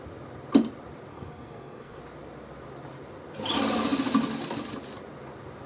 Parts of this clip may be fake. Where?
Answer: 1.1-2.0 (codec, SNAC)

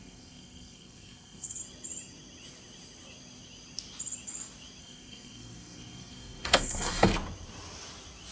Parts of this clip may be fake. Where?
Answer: 0.0-1.6 (codec, SNAC); 4.8-7.1

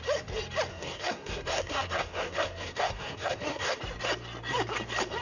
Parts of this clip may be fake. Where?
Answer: 0.7-3.8 (codec, SNAC)

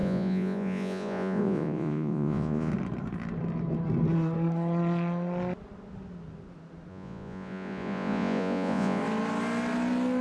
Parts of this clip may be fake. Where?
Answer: 0.0-2.7 (vocoder, Vocos); 6.9-9.0

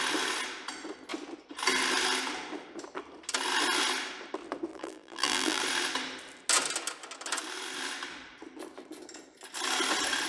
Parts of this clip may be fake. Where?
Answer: 4.7-5.6 (vocoder, BigVGAN v2)

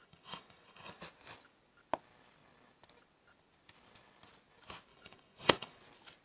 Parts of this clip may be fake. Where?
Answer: 0.0-1.0 (vocoder, Vocos); 4.9-5.8

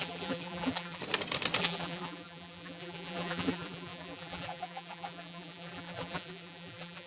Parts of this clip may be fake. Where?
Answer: 0.0-1.0 (vocoder, BigVGAN v2); 1.6-7.1